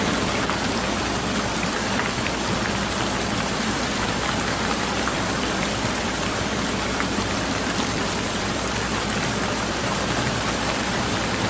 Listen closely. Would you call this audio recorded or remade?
remade